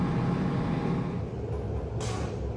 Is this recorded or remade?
recorded